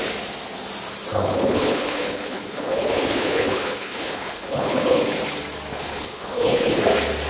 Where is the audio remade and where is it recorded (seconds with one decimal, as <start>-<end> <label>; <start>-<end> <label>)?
0.0-1.1 recorded; 1.1-5.0 remade; 5.0-5.7 recorded; 5.7-6.8 remade; 6.8-7.3 recorded